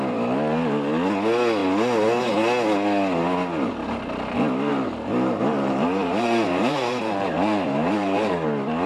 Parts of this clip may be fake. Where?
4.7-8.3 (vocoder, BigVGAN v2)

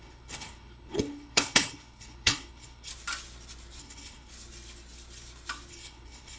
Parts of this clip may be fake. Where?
0.0-2.9 (codec, HILCodec); 3.8-4.3; 5.7-6.4

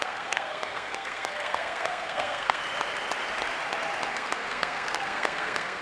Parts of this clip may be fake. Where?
0.0-2.6 (codec, SNAC); 4.1-5.8

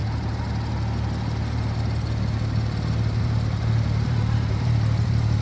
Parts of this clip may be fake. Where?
3.2-5.4 (vocoder, BigVGAN v2)